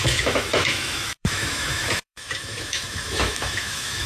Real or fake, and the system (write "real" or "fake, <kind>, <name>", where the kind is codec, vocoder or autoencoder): fake, autoencoder, DAC-VAE